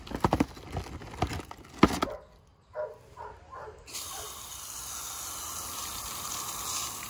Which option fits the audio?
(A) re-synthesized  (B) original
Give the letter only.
B